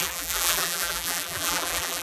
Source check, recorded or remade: remade